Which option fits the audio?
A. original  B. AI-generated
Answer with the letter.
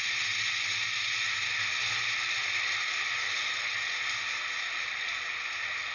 A